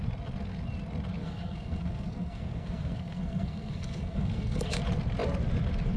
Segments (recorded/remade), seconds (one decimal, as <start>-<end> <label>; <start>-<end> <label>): 0.0-1.2 recorded; 1.2-4.8 remade; 4.8-6.0 recorded